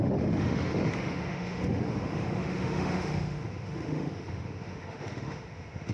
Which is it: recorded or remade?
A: remade